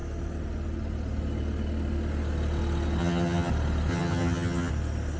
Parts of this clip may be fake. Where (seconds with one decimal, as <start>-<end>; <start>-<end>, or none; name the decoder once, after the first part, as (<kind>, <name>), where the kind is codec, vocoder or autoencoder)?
3.0-3.5 (vocoder, HiFi-GAN); 3.9-4.7